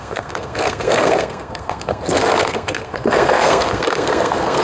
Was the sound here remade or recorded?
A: remade